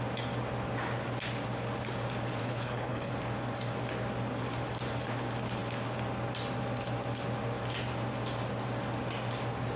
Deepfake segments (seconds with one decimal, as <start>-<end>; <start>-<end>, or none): 2.4-3.1